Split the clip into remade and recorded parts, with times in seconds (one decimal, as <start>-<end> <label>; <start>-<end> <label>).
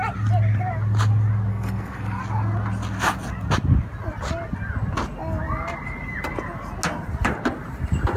0.0-1.5 recorded; 1.5-2.2 remade; 2.2-8.2 recorded